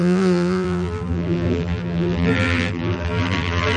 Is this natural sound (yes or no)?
no